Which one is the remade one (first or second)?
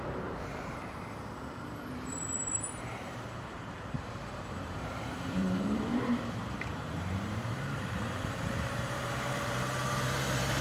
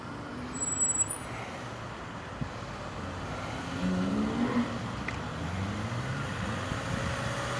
first